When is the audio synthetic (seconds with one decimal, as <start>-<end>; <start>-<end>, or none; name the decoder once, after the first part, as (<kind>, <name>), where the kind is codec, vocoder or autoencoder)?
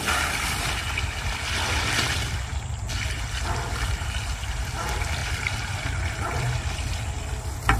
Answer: 0.0-2.5 (vocoder, BigVGAN v2); 3.6-7.8